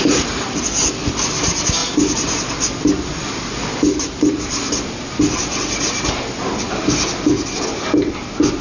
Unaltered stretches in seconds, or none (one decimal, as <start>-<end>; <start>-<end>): 0.0-8.6